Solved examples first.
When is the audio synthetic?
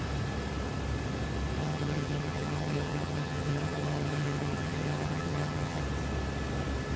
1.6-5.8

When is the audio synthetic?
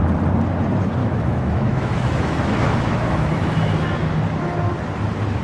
1.0-4.2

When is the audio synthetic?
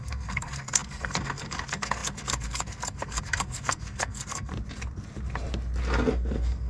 0.0-4.5; 6.1-6.7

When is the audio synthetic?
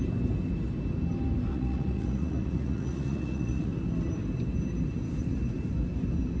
1.5-3.7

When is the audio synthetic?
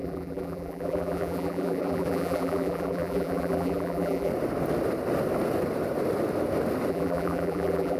0.0-4.3; 6.9-8.0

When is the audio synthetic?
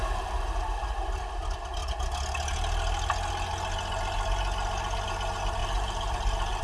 0.0-0.9; 5.6-6.6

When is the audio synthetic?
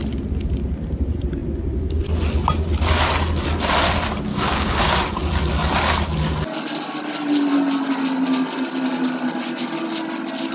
4.3-4.8